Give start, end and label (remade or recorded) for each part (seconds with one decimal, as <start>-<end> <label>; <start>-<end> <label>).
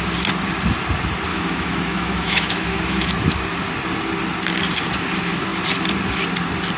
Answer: 0.0-1.3 recorded; 1.3-3.1 remade; 3.1-6.8 recorded